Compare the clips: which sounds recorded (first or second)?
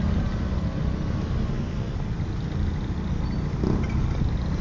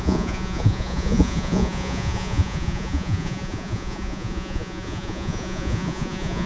first